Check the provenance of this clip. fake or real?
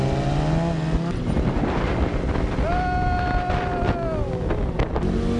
real